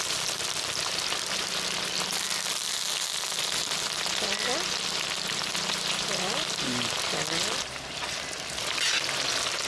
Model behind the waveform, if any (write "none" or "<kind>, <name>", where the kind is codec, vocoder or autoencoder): none